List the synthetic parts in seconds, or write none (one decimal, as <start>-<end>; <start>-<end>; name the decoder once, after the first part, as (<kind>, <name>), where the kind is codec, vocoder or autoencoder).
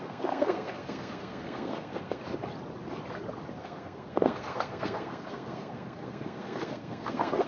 0.0-2.2 (codec, SNAC); 3.5-7.5